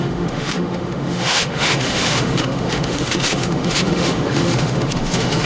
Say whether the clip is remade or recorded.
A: remade